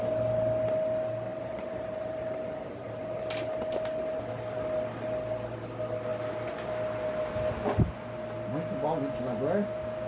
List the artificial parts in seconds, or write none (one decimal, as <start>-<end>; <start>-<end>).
1.3-2.9